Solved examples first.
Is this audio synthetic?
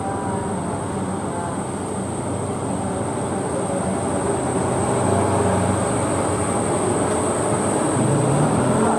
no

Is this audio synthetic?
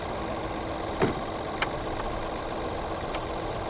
no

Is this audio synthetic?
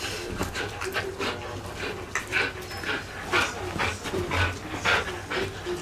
no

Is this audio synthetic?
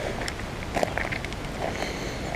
no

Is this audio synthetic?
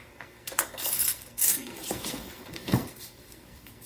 yes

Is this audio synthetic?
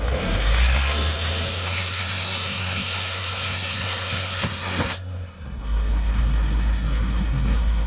yes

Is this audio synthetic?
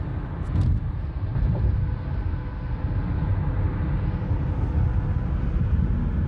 no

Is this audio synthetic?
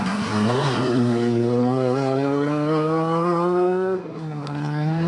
yes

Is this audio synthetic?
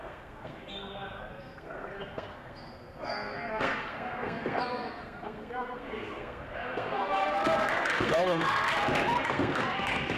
yes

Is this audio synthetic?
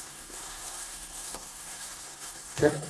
yes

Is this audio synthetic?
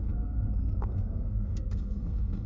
yes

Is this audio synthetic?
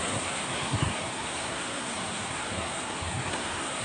yes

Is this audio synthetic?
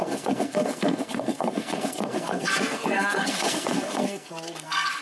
yes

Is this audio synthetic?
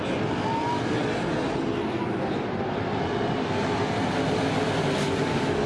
no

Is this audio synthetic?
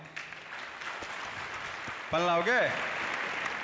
no